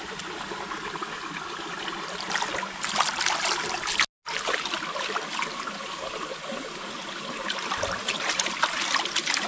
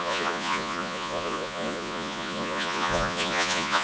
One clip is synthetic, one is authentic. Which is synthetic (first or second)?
second